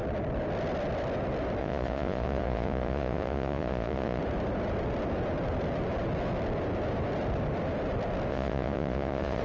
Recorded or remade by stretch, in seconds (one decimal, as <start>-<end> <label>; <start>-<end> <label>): 0.0-1.6 recorded; 1.6-4.2 remade; 4.2-8.3 recorded; 8.3-9.4 remade